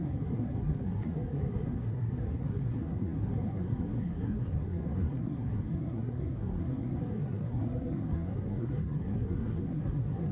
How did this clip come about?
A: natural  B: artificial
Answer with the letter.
B